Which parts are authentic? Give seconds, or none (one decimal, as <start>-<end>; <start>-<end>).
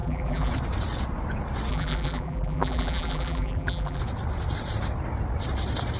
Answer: 0.5-1.7; 4.0-6.0